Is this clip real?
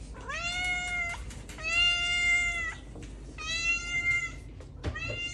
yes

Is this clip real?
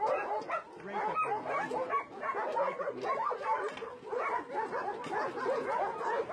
yes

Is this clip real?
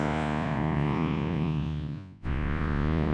no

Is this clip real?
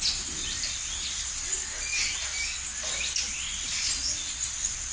yes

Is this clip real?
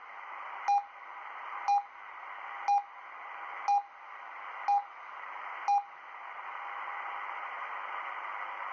yes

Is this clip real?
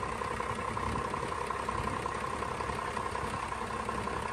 yes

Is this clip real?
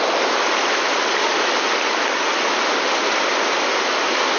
yes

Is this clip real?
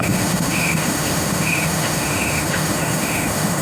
no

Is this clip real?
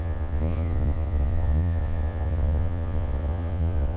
no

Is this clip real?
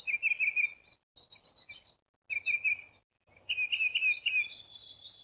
yes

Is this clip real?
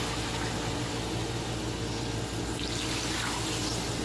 yes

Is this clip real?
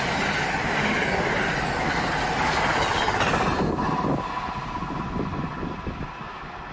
yes